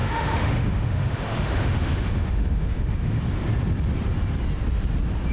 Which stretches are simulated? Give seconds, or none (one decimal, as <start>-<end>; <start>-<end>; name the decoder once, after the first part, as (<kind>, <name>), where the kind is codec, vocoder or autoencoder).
0.0-3.2 (autoencoder, DAC-VAE)